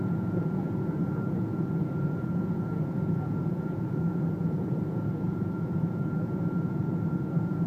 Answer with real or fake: fake